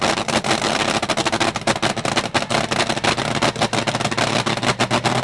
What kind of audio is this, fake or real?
real